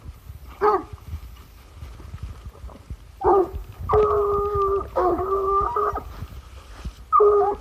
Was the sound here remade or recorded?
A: recorded